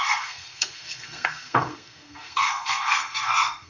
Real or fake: fake